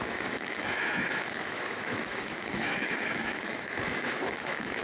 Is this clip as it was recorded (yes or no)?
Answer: no